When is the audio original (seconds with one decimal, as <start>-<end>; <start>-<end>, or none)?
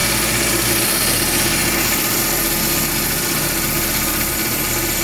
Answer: 0.0-5.0